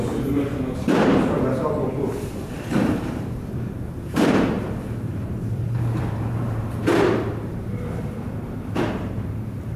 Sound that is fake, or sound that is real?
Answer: fake